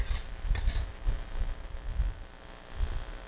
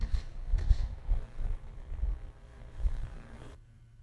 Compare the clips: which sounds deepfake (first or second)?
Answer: second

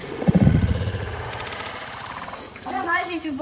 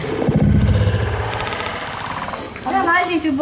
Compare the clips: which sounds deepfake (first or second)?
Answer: first